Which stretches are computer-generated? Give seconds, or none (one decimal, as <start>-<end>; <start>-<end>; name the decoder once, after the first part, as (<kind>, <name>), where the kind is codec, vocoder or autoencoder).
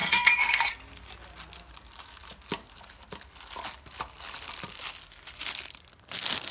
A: 0.0-0.7 (codec, SNAC)